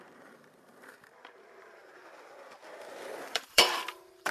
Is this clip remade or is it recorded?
remade